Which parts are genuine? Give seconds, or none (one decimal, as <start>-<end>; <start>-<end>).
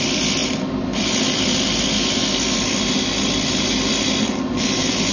0.0-5.1